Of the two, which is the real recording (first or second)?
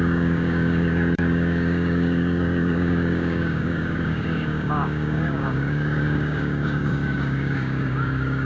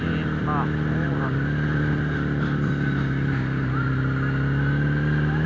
second